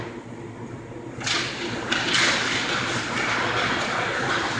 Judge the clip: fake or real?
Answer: real